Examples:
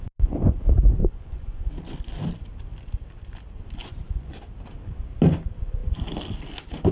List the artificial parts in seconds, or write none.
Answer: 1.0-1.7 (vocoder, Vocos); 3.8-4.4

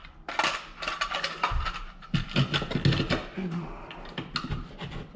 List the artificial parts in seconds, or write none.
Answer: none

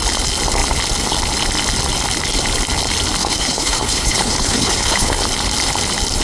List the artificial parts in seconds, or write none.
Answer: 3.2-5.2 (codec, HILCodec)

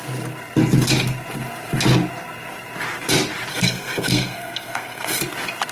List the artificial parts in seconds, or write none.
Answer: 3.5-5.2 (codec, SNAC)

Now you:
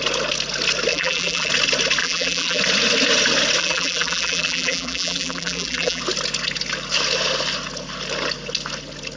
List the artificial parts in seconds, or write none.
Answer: 0.9-1.5 (vocoder, BigVGAN v2); 2.0-2.6; 3.6-6.0